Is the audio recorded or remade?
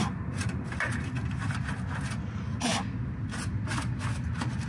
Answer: recorded